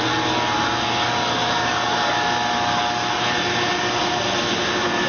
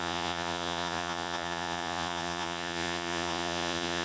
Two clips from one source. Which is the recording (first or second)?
first